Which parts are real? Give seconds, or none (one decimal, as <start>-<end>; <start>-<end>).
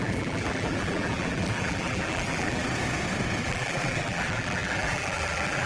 2.6-3.4